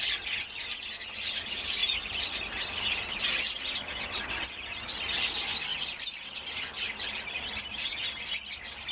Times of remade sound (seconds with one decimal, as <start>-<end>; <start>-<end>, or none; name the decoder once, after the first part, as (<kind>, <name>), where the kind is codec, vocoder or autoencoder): 1.8-3.3 (vocoder, BigVGAN v2); 5.7-6.5